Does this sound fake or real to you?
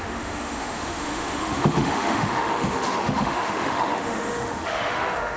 fake